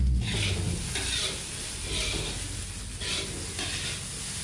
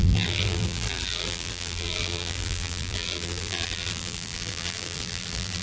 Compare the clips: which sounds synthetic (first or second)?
second